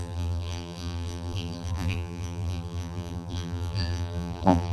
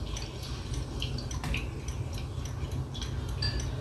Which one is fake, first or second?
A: first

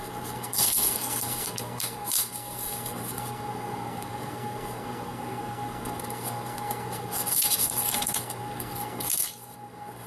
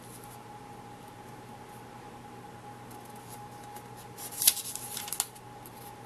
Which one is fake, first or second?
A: first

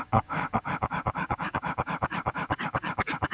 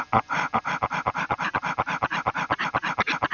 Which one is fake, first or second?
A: first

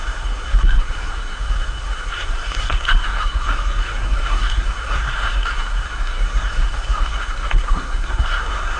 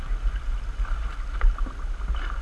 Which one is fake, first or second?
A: first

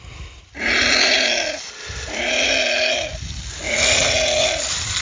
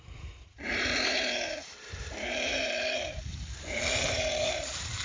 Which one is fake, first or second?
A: second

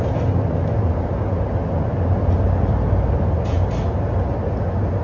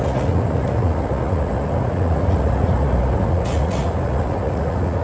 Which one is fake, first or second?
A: second